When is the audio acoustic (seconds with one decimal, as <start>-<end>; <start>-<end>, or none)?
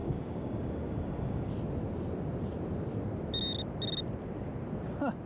1.5-5.3